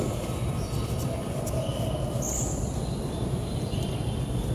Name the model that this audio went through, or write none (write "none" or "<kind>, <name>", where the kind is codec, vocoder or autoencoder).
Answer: none